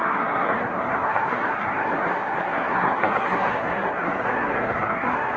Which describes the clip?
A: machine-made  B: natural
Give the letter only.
A